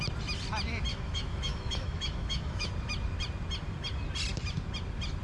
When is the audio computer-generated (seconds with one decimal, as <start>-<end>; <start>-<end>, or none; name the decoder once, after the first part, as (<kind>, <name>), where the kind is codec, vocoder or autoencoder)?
0.9-2.7 (autoencoder, DAC-VAE)